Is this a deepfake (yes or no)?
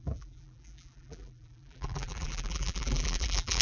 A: yes